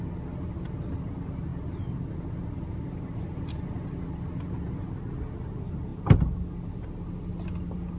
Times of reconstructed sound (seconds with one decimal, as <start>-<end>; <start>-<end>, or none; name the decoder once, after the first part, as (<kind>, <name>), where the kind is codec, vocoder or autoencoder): none